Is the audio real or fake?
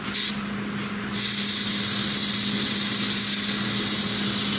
real